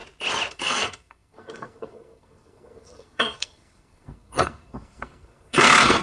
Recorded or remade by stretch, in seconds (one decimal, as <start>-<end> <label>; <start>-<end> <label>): 0.0-0.5 recorded; 0.5-6.0 remade